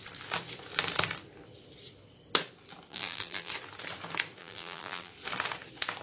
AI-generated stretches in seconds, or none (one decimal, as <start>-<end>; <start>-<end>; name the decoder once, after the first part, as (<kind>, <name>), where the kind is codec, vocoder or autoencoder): 2.9-3.5 (vocoder, BigVGAN v2); 4.4-5.1